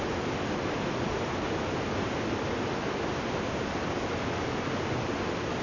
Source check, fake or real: real